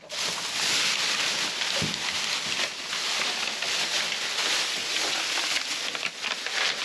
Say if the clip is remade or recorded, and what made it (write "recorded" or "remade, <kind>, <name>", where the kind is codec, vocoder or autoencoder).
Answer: recorded